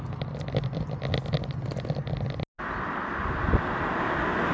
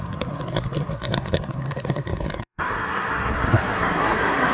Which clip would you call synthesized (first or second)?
second